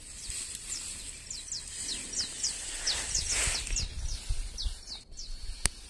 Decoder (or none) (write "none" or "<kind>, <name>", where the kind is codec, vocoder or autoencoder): none